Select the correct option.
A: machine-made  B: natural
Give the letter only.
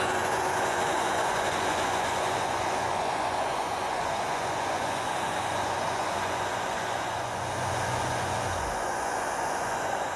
A